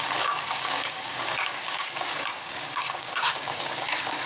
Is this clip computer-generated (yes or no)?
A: yes